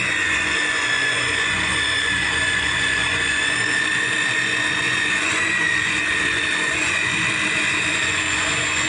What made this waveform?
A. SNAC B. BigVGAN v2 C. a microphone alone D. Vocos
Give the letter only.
D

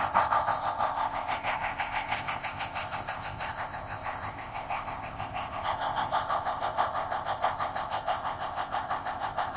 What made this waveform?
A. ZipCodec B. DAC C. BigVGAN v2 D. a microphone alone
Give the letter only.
A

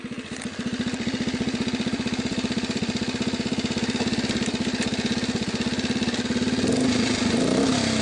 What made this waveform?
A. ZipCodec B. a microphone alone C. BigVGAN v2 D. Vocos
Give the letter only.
C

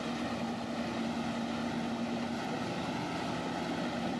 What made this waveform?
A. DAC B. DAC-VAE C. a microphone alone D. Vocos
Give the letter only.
C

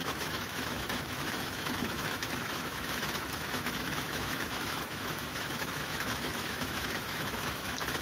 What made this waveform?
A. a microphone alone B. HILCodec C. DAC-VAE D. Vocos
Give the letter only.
C